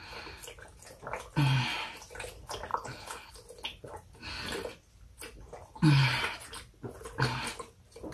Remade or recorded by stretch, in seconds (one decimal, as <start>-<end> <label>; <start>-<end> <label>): 0.0-2.7 recorded; 2.7-3.3 remade; 3.3-8.1 recorded